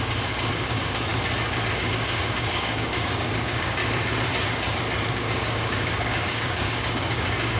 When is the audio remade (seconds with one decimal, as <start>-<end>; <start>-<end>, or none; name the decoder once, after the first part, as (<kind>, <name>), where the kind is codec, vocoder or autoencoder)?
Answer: 0.0-1.1 (codec, DAC); 1.7-3.8; 5.1-7.6

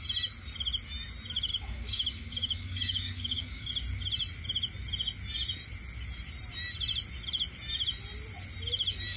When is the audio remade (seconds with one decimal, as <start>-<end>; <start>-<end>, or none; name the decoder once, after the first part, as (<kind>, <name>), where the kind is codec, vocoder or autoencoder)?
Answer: 1.5-3.7 (codec, DAC)